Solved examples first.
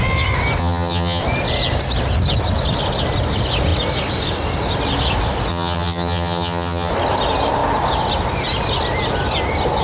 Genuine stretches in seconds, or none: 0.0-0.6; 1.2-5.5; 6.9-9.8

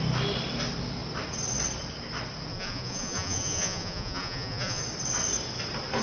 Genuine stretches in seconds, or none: 0.0-2.5; 4.8-6.0

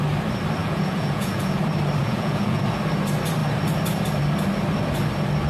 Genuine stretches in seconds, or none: 0.0-0.6; 1.6-2.0; 2.7-5.5